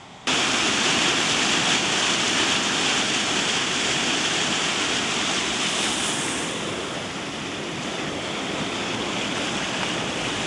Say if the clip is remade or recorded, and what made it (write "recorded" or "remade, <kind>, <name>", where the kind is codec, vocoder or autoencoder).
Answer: recorded